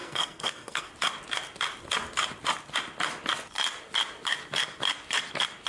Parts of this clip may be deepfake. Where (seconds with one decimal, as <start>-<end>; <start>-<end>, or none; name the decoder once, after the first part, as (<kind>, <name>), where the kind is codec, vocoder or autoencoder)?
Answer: 0.0-0.9 (codec, SNAC)